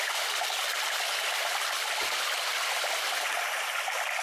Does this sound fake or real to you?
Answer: real